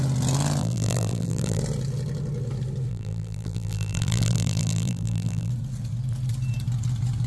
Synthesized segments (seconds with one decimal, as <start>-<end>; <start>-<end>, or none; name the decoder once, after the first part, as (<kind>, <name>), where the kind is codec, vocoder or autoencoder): 0.6-1.6 (vocoder, BigVGAN v2); 2.9-5.5